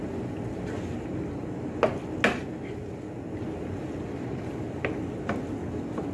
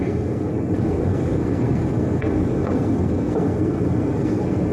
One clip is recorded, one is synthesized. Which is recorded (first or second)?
first